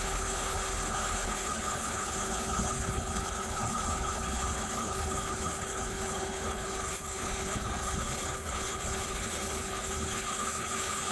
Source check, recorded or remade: remade